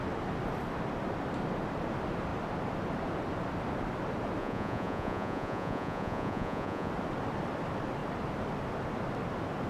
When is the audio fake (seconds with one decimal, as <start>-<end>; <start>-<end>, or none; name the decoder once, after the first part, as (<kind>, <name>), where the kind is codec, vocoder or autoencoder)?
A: 4.4-6.9 (vocoder, Vocos)

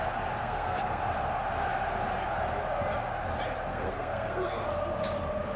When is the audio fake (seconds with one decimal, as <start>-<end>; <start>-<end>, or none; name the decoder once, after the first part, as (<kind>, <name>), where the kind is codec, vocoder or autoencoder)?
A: 0.4-1.0 (codec, SNAC); 3.7-4.7

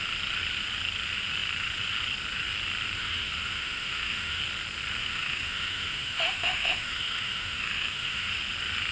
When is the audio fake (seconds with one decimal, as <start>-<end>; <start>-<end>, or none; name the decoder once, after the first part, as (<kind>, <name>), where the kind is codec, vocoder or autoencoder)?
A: 3.0-4.4 (autoencoder, DAC-VAE); 5.0-8.3

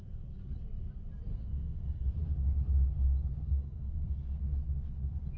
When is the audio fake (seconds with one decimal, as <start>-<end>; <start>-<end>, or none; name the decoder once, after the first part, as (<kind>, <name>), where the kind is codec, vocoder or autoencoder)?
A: 1.3-2.1 (codec, SNAC); 3.5-4.4